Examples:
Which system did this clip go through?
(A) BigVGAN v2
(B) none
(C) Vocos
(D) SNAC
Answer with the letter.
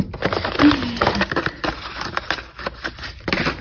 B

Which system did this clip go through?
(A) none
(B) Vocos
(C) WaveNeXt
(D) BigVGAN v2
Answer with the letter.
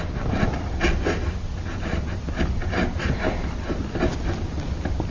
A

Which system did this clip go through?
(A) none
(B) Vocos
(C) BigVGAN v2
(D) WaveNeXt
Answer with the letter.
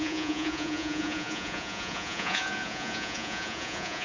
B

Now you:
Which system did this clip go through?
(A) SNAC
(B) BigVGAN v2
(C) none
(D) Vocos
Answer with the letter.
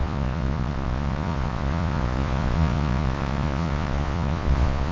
D